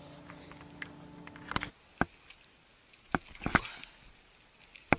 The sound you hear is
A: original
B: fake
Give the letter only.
A